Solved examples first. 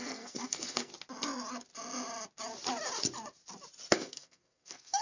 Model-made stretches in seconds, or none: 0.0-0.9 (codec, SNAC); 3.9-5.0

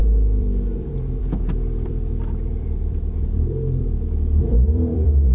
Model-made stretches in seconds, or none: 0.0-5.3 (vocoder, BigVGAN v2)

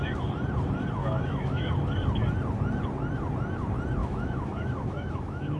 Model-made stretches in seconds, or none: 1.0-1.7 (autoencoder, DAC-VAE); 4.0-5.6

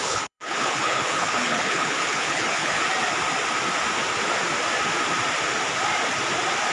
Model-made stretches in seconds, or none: 0.0-2.8 (codec, HILCodec)

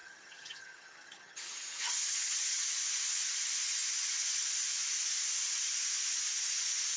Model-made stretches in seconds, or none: 0.0-2.6 (vocoder, HiFi-GAN)

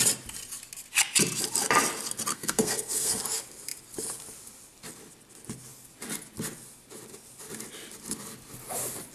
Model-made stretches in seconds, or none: 2.3-3.2 (codec, SNAC)